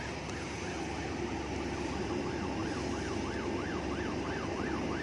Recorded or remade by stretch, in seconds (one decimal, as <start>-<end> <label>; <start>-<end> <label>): 0.0-5.0 recorded